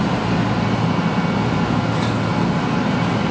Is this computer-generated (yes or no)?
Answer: no